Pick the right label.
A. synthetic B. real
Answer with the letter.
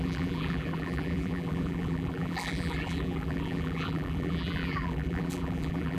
A